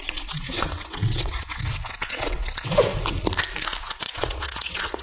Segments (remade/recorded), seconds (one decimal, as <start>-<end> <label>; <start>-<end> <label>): 0.0-2.9 remade; 2.9-3.8 recorded; 3.8-5.0 remade